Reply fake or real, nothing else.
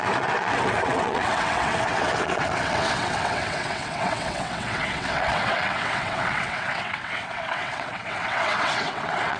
fake